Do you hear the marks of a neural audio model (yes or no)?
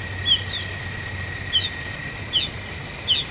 no